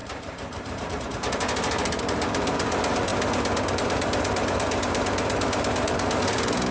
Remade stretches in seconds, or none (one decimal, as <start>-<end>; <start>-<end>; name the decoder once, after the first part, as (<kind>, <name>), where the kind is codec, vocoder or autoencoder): 0.0-3.1 (vocoder, BigVGAN v2); 3.7-6.7